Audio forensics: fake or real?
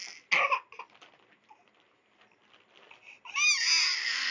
real